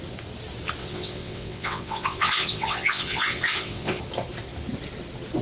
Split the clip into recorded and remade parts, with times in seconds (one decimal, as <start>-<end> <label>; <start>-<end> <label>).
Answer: 0.0-0.8 recorded; 0.8-4.0 remade; 4.0-5.4 recorded